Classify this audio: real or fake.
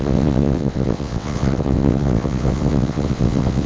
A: fake